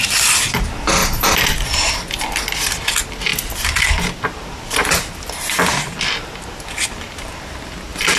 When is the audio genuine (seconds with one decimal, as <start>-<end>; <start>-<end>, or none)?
0.0-1.0; 1.9-8.2